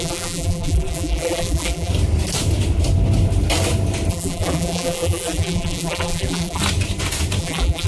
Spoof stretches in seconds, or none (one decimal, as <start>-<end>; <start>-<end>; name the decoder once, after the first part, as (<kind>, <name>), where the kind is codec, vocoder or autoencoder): 0.0-1.9 (vocoder, BigVGAN v2); 4.1-6.6; 7.4-7.9